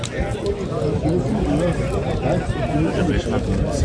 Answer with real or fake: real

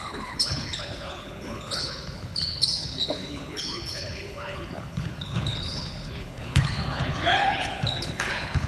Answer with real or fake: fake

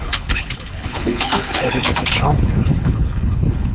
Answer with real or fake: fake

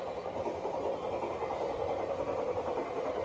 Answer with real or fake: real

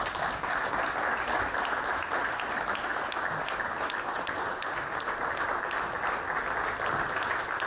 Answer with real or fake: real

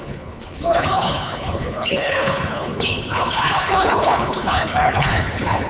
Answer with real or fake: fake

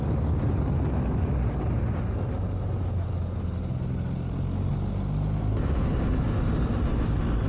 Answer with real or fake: real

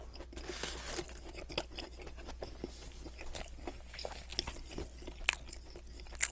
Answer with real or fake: real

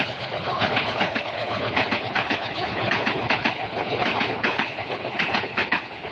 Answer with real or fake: fake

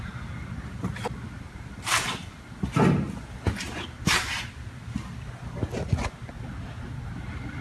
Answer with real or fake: real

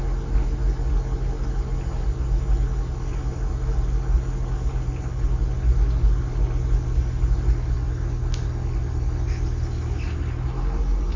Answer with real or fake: real